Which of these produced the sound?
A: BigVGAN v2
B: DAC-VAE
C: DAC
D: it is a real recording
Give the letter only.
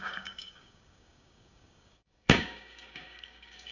C